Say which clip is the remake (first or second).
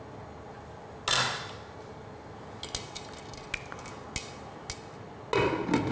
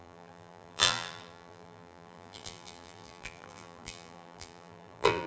second